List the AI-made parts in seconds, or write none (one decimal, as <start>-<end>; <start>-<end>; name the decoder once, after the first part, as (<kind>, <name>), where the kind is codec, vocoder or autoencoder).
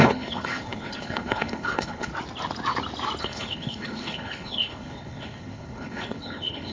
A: 0.0-2.1 (codec, HILCodec); 3.2-6.7